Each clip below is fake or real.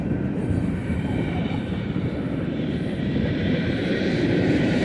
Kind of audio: fake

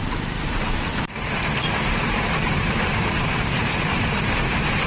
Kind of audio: fake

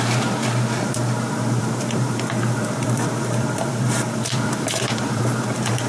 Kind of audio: fake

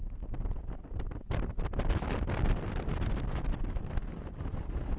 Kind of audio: real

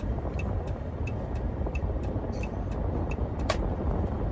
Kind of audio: fake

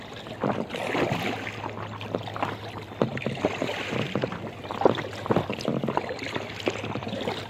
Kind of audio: real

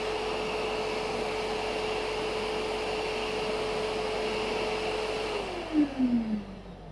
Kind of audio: real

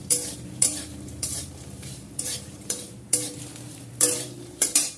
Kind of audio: fake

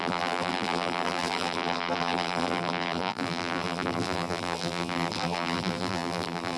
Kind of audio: fake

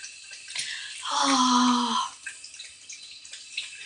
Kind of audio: real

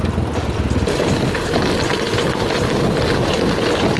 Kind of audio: real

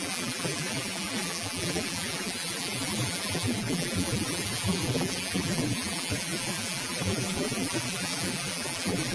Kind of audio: fake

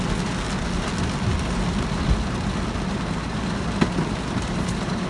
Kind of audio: real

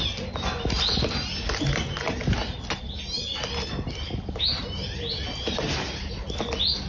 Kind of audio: real